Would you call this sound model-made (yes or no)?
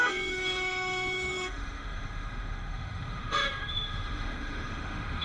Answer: yes